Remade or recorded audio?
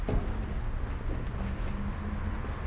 recorded